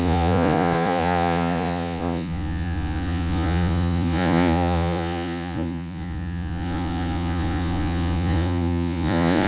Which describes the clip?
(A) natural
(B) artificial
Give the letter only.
B